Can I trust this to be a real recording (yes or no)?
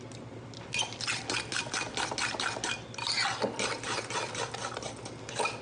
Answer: yes